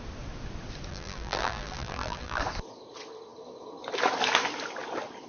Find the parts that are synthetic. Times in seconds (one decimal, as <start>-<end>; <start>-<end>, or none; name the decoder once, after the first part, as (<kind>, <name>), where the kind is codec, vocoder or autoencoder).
0.9-2.4 (vocoder, BigVGAN v2)

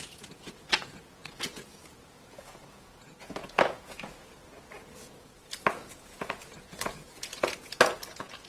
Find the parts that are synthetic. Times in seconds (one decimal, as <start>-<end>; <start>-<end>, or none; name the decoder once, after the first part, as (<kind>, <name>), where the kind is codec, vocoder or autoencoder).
0.0-4.4 (vocoder, Vocos); 5.0-8.5

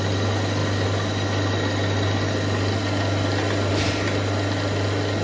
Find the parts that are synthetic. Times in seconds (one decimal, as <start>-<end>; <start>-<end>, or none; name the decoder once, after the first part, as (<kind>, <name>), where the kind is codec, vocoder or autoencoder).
none

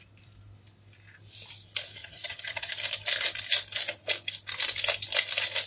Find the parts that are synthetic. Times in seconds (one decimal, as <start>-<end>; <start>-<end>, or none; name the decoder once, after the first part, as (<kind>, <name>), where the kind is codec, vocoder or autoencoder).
2.0-2.7 (vocoder, HiFi-GAN)

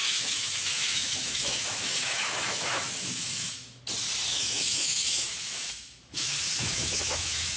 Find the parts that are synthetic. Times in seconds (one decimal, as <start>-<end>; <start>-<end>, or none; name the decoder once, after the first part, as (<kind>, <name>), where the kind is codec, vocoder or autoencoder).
0.0-3.8 (autoencoder, DAC-VAE); 4.3-7.6